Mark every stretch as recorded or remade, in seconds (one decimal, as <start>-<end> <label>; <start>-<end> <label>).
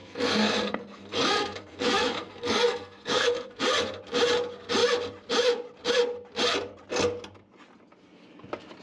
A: 0.0-3.6 remade; 3.6-8.8 recorded